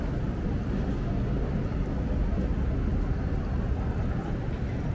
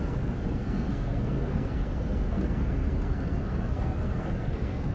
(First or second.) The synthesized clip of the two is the second